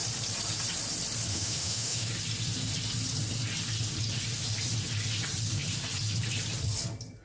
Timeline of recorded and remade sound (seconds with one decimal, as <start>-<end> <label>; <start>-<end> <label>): 0.0-1.3 recorded; 1.3-2.1 remade; 2.1-7.2 recorded

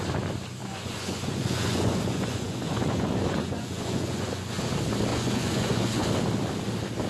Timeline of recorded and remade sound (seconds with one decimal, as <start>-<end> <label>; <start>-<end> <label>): 0.0-0.6 recorded; 0.6-4.6 remade; 4.6-5.1 recorded; 5.1-6.1 remade; 6.1-7.1 recorded

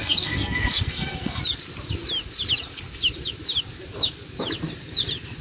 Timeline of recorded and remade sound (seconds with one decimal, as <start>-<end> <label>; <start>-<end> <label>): 0.0-1.4 remade; 1.4-5.4 recorded